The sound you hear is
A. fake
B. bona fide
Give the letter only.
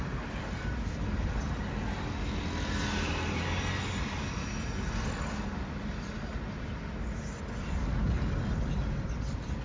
B